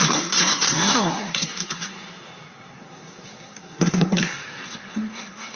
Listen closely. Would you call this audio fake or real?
fake